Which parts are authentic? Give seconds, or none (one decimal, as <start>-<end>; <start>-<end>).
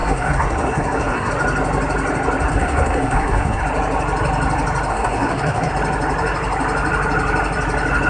1.3-2.5; 3.6-4.9; 5.7-8.1